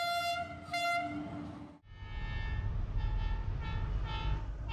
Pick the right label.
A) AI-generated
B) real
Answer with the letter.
B